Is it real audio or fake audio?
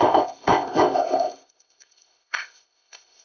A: fake